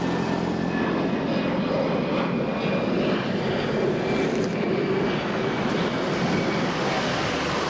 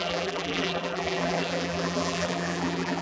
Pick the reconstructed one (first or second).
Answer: second